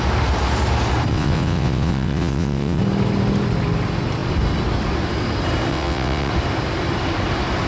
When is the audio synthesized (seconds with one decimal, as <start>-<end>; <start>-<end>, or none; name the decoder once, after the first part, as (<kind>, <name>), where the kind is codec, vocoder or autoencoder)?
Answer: 1.1-2.8 (vocoder, WaveNeXt); 5.7-6.3